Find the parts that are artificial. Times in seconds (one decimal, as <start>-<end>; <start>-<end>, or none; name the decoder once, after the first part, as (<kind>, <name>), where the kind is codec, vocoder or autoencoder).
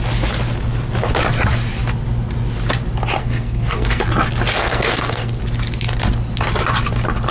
3.2-4.0 (codec, SNAC); 4.5-5.4